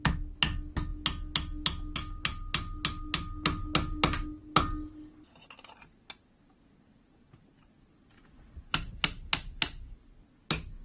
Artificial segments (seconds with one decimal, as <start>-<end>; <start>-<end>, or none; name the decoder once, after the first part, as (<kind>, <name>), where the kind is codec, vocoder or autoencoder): none